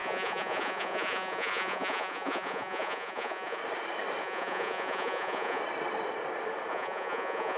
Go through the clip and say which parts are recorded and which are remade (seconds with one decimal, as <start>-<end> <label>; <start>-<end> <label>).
0.0-3.6 remade; 3.6-4.2 recorded; 4.2-5.6 remade; 5.6-6.7 recorded; 6.7-7.6 remade